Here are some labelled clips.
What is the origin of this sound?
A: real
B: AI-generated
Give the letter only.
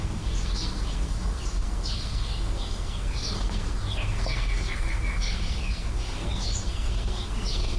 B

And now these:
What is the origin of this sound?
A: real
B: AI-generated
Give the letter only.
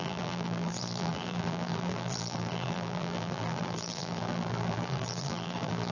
B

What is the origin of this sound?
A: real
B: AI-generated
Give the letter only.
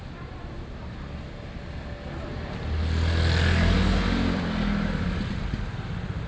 A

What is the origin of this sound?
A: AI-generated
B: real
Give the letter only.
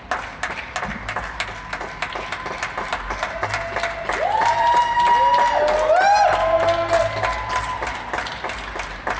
B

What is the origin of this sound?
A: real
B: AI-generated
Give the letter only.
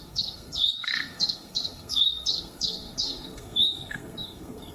B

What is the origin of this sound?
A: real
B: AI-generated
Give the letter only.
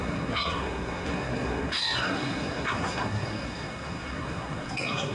B